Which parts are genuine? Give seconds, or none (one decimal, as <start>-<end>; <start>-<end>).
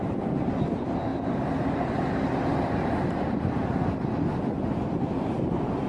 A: 1.1-4.4